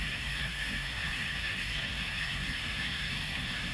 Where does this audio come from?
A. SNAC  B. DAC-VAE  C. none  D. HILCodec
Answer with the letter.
A